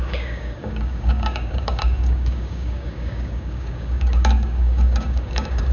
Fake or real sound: fake